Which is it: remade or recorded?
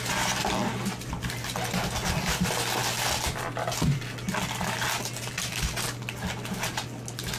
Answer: recorded